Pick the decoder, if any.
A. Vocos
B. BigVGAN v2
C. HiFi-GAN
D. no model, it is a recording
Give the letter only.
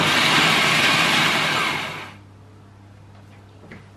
B